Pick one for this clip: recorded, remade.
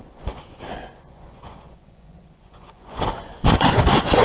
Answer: remade